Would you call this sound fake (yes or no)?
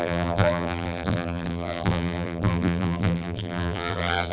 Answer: yes